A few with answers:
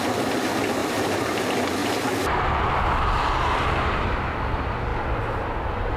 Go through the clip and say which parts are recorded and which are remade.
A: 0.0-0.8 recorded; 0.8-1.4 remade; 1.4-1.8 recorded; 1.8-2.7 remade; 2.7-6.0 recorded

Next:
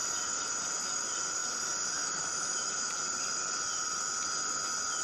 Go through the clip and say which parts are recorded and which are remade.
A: 0.0-5.0 recorded

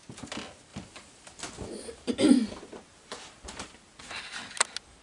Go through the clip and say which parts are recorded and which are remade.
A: 0.0-0.7 recorded; 0.7-2.1 remade; 2.1-2.9 recorded; 2.9-4.0 remade; 4.0-5.0 recorded